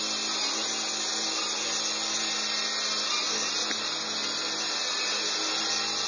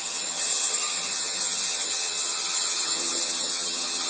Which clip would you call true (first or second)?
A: first